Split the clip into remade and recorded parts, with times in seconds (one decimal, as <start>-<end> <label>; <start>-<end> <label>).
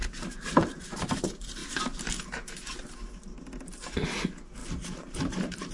0.0-1.2 remade; 1.2-4.6 recorded; 4.6-5.7 remade